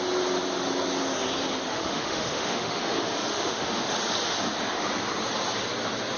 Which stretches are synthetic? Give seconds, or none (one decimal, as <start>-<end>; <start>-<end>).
1.7-2.8; 3.3-3.9